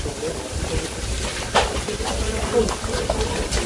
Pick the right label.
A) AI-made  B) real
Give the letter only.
A